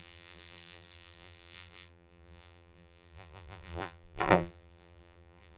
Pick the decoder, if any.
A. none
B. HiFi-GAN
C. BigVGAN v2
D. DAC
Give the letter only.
C